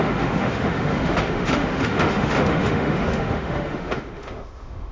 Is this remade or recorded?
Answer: remade